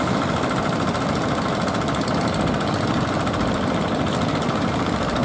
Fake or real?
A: real